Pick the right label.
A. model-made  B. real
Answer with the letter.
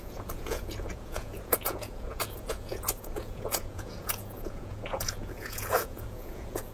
A